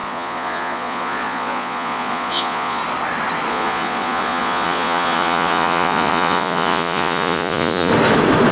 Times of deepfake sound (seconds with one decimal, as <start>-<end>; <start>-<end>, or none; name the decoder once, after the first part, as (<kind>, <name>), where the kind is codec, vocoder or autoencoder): 0.0-2.8 (vocoder, Vocos); 3.5-7.9